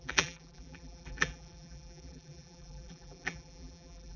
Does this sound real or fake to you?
fake